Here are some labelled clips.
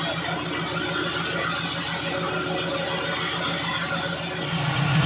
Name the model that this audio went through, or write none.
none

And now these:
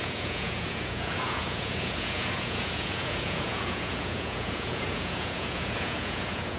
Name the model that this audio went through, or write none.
vocoder, Vocos